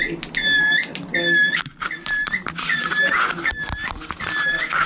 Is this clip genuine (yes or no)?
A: yes